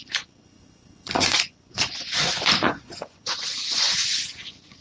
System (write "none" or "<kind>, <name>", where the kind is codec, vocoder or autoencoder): vocoder, Vocos